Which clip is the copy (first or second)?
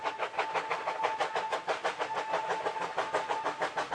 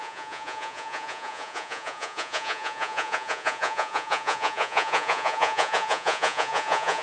second